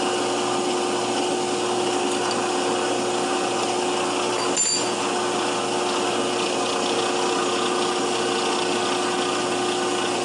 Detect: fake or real real